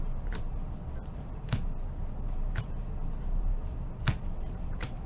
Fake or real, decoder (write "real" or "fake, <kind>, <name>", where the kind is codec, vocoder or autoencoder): fake, vocoder, BigVGAN v2